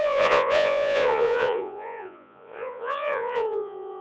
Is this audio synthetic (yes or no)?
yes